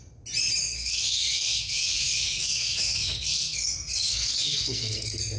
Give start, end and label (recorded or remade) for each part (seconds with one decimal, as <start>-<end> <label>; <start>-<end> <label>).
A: 0.0-0.6 recorded; 0.6-5.4 remade